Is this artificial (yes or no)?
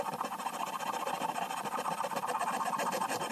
no